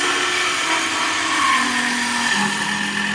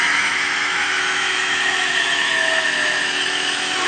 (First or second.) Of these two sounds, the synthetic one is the second